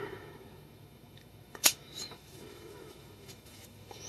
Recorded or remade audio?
remade